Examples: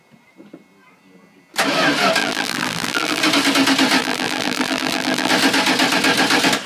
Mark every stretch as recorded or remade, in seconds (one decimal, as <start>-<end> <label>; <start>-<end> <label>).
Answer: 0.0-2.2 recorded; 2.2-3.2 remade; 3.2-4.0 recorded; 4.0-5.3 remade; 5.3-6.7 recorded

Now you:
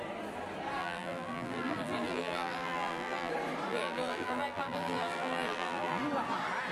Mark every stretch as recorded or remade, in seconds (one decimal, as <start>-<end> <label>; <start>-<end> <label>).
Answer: 0.0-0.8 recorded; 0.8-3.3 remade; 3.3-3.7 recorded; 3.7-6.0 remade; 6.0-6.7 recorded

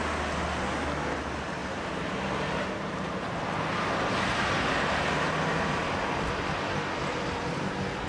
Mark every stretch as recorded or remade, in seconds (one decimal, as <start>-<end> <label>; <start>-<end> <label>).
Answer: 0.0-1.6 recorded; 1.6-5.8 remade; 5.8-8.1 recorded

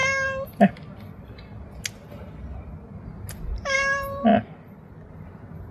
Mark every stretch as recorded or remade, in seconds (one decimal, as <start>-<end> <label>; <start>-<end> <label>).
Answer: 0.0-3.4 recorded; 3.4-4.3 remade; 4.3-5.1 recorded; 5.1-5.7 remade

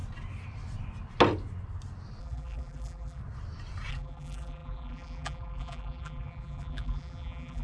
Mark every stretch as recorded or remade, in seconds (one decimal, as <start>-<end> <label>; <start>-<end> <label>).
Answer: 0.0-2.2 recorded; 2.2-3.2 remade; 3.2-3.9 recorded; 3.9-7.6 remade